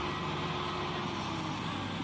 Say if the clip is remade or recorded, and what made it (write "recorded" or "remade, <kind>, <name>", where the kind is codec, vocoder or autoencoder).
recorded